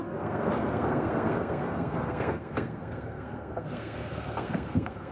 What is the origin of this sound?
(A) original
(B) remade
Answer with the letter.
B